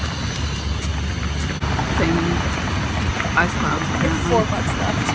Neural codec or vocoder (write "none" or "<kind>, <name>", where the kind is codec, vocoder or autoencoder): none